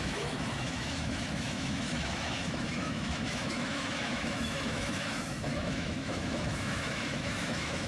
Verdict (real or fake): fake